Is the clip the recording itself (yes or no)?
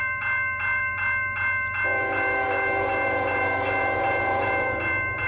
no